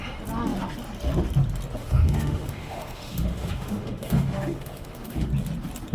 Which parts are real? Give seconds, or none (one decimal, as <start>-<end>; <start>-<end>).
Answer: 0.0-1.8; 5.3-5.9